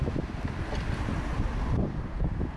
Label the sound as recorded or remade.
recorded